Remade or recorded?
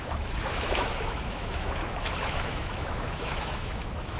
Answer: remade